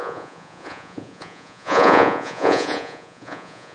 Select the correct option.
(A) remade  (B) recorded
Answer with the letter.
A